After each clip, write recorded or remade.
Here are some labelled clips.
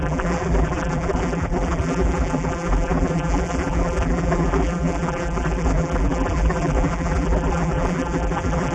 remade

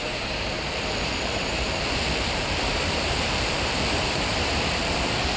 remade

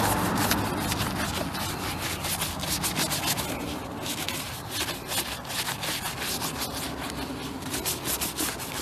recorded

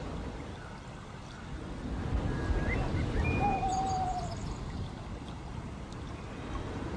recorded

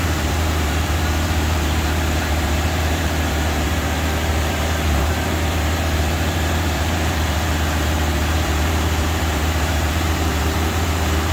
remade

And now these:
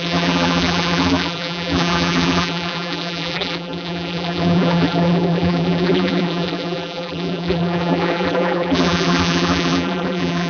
remade